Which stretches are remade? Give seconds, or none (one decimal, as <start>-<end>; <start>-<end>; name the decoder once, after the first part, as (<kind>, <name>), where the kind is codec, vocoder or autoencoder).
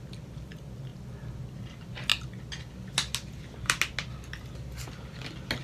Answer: none